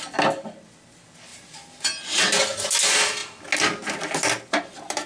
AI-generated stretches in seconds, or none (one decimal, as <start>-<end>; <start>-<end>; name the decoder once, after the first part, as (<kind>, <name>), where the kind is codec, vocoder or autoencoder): none